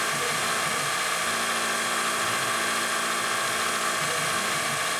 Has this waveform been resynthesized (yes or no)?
no